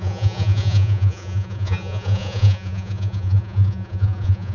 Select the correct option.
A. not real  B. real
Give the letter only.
A